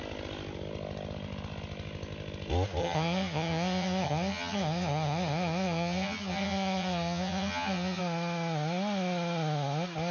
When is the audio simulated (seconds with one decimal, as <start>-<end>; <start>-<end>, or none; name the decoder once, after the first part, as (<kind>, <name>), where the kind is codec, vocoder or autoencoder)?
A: 2.8-8.0 (vocoder, HiFi-GAN)